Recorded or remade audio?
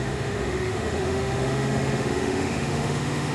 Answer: remade